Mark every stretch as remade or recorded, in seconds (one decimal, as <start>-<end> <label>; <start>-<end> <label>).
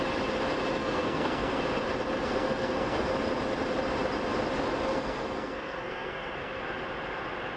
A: 0.0-0.8 recorded; 0.8-1.6 remade; 1.6-2.2 recorded; 2.2-3.1 remade; 3.1-4.9 recorded; 4.9-6.6 remade; 6.6-7.6 recorded